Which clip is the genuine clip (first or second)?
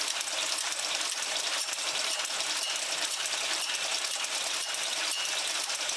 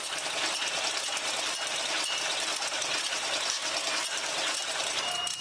second